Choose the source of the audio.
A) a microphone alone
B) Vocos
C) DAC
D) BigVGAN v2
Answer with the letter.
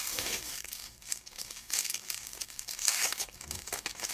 C